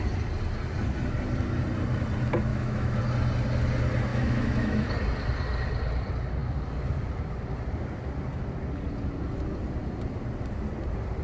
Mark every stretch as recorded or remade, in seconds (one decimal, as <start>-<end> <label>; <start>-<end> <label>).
0.0-2.5 recorded; 2.5-3.0 remade; 3.0-4.1 recorded; 4.1-4.9 remade; 4.9-11.2 recorded

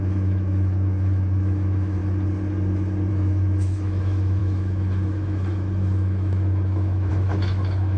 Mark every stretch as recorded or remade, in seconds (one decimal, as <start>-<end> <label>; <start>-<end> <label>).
0.0-2.0 remade; 2.0-3.1 recorded; 3.1-8.0 remade

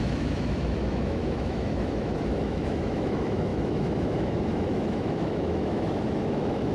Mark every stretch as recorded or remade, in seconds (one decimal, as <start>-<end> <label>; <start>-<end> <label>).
0.0-6.7 remade

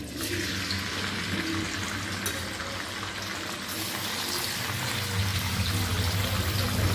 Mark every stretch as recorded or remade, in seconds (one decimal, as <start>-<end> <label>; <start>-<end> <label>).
0.0-6.9 recorded

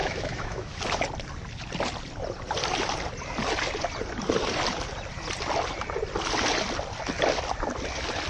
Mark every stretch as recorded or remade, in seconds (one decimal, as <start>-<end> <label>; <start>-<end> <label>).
0.0-0.8 remade; 0.8-8.3 recorded

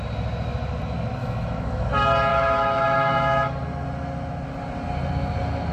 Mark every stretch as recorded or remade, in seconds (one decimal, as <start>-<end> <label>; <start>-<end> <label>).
0.0-1.2 recorded; 1.2-1.9 remade; 1.9-2.3 recorded; 2.3-3.6 remade; 3.6-5.7 recorded